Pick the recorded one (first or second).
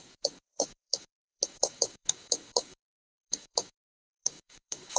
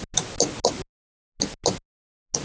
second